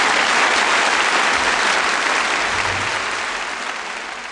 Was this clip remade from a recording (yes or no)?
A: no